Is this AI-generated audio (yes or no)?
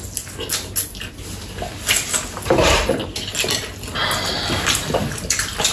no